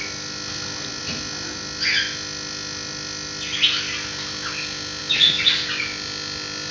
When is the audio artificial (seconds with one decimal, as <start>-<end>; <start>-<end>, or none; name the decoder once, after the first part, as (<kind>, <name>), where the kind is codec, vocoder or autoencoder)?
none